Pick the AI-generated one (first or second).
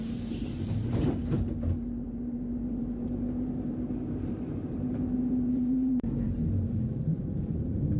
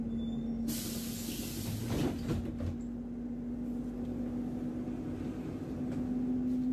first